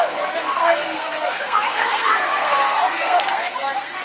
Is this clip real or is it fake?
fake